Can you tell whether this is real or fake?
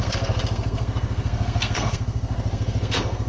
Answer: fake